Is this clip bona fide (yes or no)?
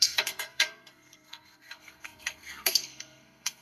no